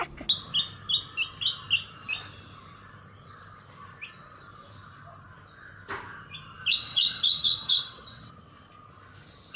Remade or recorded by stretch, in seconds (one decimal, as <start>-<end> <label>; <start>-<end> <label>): 0.0-6.7 recorded; 6.7-8.3 remade; 8.3-9.6 recorded